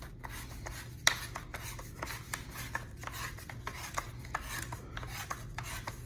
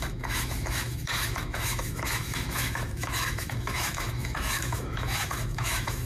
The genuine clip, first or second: first